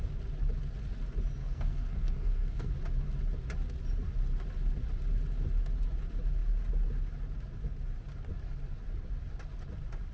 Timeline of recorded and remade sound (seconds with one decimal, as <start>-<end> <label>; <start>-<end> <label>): 0.0-1.4 recorded; 1.4-2.7 remade; 2.7-10.1 recorded